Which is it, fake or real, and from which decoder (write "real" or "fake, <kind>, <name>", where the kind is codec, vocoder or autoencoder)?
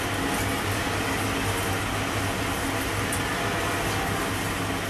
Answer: real